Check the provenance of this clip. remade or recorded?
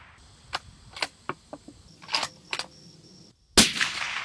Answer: recorded